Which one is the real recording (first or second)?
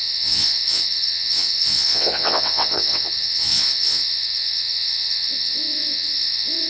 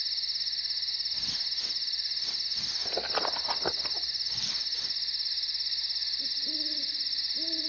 second